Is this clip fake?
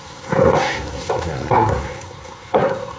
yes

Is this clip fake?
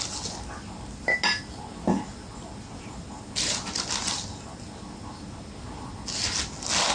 no